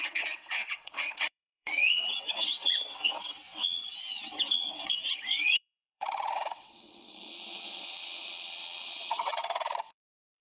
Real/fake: fake